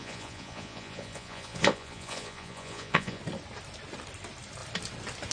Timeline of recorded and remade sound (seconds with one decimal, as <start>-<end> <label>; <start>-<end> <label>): 0.0-3.2 remade; 3.2-5.3 recorded